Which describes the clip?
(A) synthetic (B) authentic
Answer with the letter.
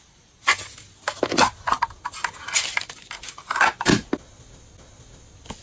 B